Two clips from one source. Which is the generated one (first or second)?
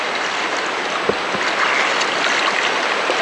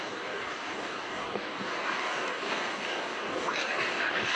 second